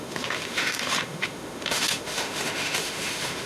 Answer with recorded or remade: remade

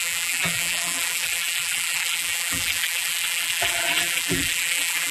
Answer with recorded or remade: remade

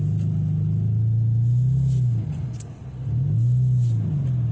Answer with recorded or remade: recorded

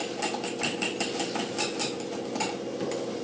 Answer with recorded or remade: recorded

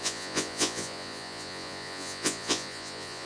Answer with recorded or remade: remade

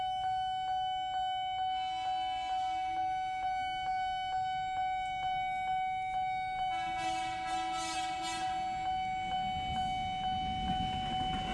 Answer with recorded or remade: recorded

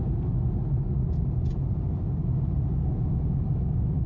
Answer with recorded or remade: recorded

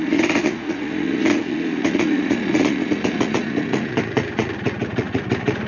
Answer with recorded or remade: remade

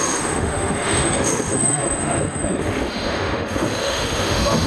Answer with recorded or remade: remade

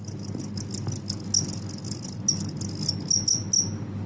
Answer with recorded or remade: recorded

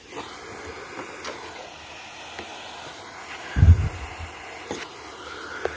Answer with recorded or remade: recorded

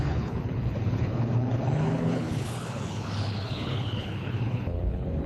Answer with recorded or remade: remade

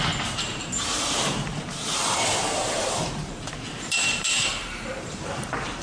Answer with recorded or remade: remade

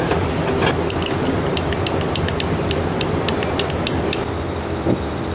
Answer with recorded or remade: recorded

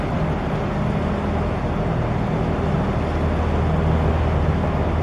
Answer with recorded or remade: recorded